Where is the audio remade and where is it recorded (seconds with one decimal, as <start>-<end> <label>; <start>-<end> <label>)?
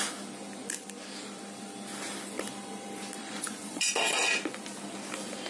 0.0-3.2 recorded; 3.2-3.9 remade; 3.9-5.5 recorded